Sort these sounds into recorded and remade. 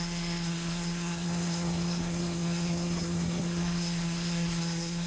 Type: remade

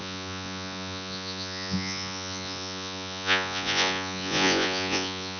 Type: remade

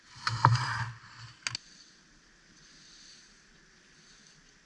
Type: recorded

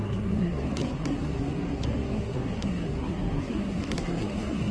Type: remade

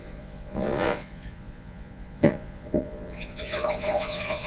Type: remade